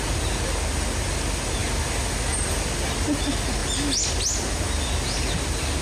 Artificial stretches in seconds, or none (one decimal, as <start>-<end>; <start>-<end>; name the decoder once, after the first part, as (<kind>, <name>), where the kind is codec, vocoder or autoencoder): none